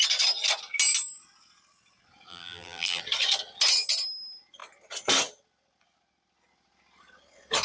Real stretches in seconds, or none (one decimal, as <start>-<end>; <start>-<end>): 0.0-2.3; 3.0-7.6